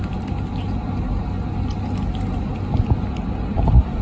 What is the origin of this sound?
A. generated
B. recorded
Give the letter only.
B